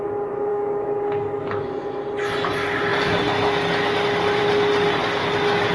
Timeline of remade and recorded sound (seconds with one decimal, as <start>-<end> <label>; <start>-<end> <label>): 0.0-0.5 recorded; 0.5-1.6 remade; 1.6-5.7 recorded